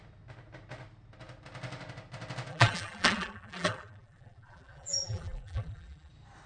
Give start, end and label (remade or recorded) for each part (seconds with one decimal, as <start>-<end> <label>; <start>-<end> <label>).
0.0-2.5 recorded; 2.5-6.1 remade; 6.1-6.5 recorded